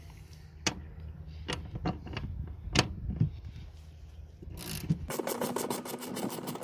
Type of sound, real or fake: real